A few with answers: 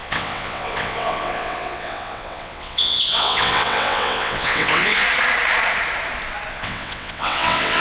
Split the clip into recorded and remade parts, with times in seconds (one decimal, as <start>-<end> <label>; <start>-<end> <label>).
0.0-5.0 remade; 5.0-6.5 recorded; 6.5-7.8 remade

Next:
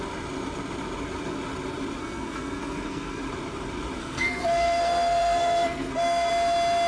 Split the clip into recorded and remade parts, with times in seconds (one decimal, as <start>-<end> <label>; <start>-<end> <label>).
0.0-2.0 recorded; 2.0-3.2 remade; 3.2-4.0 recorded; 4.0-6.3 remade; 6.3-6.9 recorded

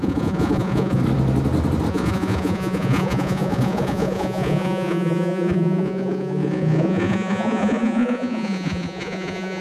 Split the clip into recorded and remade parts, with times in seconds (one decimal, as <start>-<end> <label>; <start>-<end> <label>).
0.0-1.0 remade; 1.0-1.9 recorded; 1.9-9.6 remade